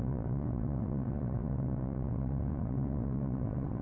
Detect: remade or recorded remade